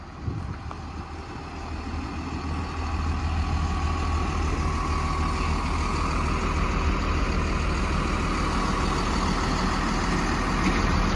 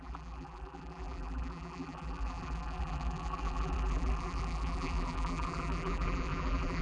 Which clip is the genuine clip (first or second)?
first